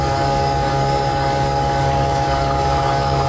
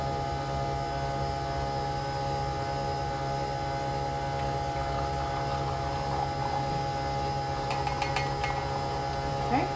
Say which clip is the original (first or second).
second